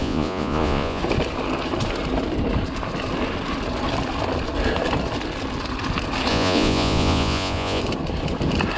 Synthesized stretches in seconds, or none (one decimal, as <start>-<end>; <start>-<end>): 0.0-1.0; 6.3-7.8